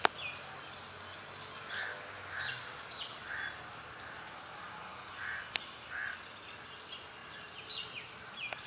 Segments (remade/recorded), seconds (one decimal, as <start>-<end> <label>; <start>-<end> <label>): 0.0-7.2 recorded; 7.2-8.7 remade

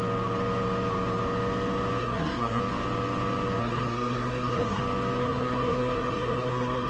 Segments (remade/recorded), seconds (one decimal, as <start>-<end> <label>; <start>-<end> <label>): 0.0-2.0 recorded; 2.0-2.6 remade; 2.6-3.6 recorded; 3.6-4.8 remade; 4.8-5.2 recorded; 5.2-6.9 remade